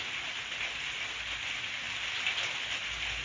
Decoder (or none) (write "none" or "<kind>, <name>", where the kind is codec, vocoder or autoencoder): none